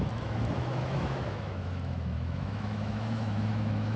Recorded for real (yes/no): no